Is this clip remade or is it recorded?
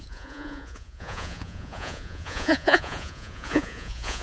remade